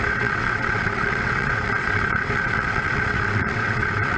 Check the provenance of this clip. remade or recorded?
remade